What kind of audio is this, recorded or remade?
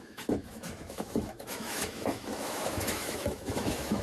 remade